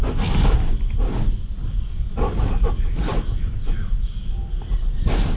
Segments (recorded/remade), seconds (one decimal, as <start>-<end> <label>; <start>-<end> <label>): 0.0-5.4 recorded